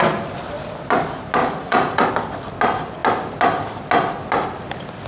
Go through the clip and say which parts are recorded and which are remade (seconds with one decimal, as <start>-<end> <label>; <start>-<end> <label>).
0.0-1.4 recorded; 1.4-2.1 remade; 2.1-5.1 recorded